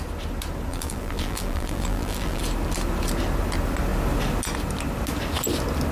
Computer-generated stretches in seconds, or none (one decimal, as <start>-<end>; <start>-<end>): 0.7-2.4